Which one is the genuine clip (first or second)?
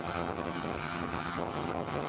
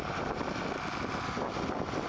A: second